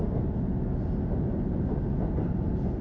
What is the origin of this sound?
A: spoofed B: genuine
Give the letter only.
B